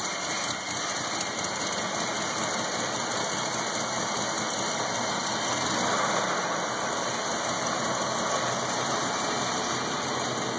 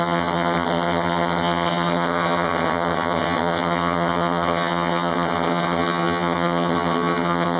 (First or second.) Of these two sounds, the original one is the first